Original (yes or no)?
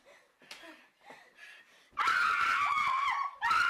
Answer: no